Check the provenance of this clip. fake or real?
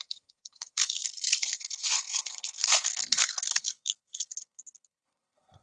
fake